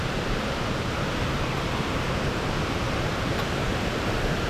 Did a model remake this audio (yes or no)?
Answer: yes